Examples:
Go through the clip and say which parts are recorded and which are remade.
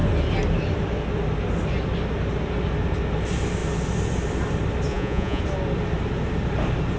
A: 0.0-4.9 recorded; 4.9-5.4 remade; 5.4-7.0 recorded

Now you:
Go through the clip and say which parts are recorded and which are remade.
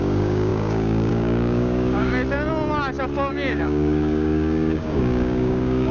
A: 0.0-2.1 remade; 2.1-3.3 recorded; 3.3-5.9 remade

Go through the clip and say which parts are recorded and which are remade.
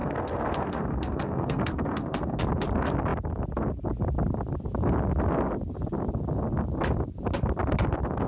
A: 0.0-2.4 remade; 2.4-8.3 recorded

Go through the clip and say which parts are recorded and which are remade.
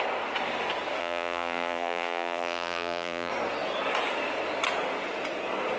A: 0.0-1.0 recorded; 1.0-3.3 remade; 3.3-5.8 recorded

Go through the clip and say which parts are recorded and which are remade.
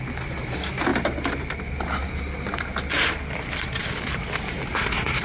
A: 0.0-5.2 recorded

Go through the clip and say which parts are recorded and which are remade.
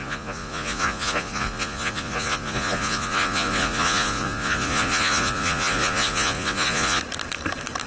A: 0.0-7.0 remade; 7.0-7.9 recorded